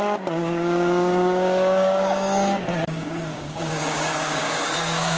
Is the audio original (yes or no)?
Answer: no